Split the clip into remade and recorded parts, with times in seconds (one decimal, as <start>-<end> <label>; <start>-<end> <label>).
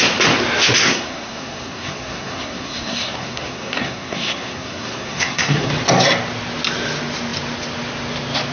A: 0.0-0.8 recorded; 0.8-5.7 remade; 5.7-8.5 recorded